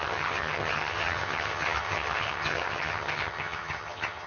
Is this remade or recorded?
remade